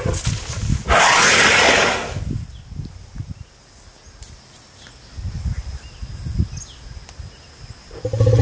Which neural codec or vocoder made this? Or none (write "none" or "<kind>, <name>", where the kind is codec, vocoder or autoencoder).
none